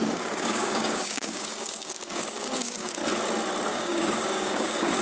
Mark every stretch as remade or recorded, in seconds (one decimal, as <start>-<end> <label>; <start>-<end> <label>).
0.0-3.0 remade; 3.0-3.7 recorded; 3.7-5.0 remade